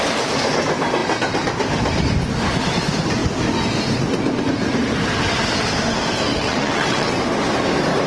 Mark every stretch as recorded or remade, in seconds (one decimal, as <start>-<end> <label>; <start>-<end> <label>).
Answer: 0.0-6.3 recorded; 6.3-7.1 remade; 7.1-8.1 recorded